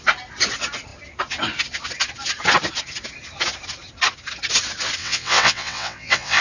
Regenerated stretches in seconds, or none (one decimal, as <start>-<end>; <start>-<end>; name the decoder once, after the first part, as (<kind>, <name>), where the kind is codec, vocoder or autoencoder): 5.0-6.4 (vocoder, WaveNeXt)